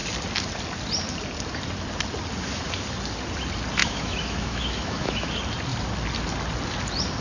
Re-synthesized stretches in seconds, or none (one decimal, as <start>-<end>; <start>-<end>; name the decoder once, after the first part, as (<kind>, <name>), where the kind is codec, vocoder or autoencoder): 3.8-5.3 (autoencoder, DAC-VAE)